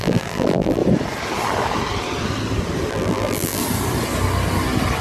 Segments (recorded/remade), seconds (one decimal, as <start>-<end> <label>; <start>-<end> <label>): 0.0-0.8 remade; 0.8-2.9 recorded; 2.9-3.6 remade; 3.6-5.0 recorded